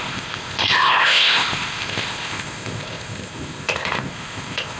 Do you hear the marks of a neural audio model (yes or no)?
yes